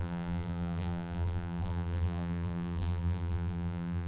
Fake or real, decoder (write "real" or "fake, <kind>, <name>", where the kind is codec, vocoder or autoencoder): fake, vocoder, BigVGAN v2